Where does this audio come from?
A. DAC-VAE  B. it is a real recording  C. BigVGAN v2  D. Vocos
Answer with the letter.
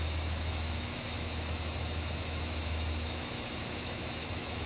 A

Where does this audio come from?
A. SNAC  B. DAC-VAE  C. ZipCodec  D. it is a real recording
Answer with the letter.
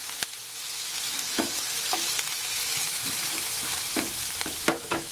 B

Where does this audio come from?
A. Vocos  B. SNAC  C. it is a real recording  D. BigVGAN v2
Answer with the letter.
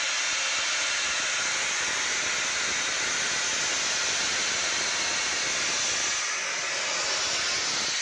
C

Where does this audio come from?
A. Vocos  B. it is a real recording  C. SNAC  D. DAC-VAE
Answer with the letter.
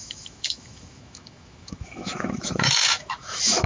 D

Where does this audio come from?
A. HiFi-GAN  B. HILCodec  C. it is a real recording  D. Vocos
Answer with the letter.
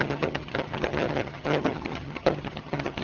A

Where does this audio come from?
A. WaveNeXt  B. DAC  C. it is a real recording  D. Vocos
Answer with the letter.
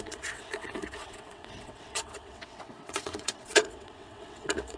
A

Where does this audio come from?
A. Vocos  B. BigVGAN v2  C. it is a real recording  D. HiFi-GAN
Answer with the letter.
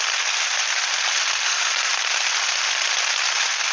C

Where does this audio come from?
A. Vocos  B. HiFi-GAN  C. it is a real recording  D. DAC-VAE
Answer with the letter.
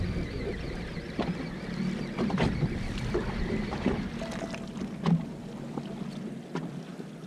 C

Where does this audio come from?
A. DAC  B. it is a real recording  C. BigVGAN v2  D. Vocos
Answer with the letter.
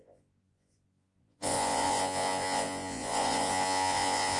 D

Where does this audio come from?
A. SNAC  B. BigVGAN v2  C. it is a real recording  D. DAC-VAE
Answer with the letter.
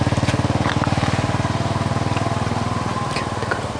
C